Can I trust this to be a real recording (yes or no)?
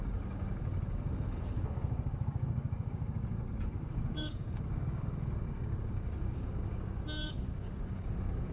no